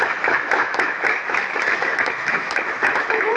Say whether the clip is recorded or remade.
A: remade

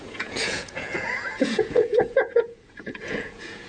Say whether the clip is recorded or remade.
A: remade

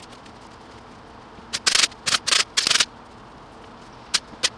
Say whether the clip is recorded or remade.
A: recorded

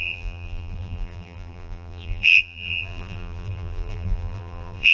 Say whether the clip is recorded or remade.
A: remade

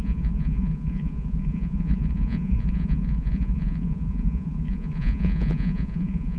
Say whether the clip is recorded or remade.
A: remade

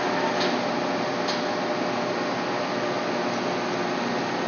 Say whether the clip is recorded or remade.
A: recorded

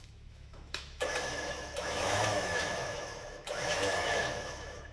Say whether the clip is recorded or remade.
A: remade